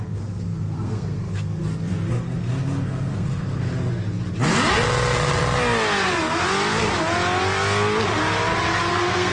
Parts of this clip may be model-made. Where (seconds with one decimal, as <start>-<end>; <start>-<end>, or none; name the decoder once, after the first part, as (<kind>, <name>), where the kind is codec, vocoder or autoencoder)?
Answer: 0.0-3.7 (codec, SNAC); 8.9-9.3